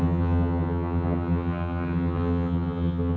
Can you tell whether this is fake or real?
fake